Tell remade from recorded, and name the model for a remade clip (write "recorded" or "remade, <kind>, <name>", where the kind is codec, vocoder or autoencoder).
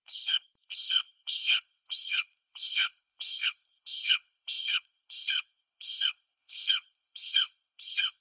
remade, codec, ZipCodec